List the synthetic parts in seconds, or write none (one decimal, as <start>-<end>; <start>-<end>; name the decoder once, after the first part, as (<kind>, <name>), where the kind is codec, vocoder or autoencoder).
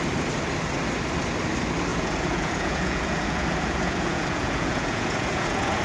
1.9-5.8 (vocoder, Vocos)